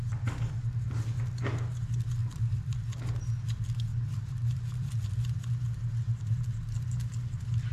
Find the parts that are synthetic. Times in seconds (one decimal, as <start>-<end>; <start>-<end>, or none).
2.2-2.8; 3.9-4.9